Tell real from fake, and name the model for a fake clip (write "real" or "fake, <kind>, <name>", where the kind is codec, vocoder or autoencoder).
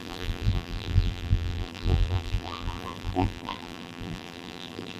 fake, vocoder, BigVGAN v2